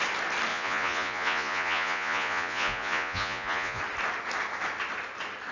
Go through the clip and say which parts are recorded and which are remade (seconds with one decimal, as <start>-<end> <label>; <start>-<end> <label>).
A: 0.0-0.5 recorded; 0.5-3.8 remade; 3.8-5.5 recorded